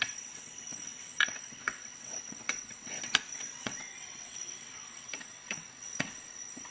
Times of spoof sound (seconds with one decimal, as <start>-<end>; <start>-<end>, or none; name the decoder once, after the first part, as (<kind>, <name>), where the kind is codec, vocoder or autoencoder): 0.0-6.7 (vocoder, WaveNeXt)